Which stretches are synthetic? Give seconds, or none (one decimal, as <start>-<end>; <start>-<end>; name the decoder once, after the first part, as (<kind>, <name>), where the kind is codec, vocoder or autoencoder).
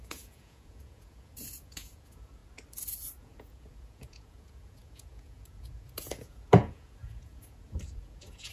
0.0-2.4 (vocoder, Vocos); 3.2-8.5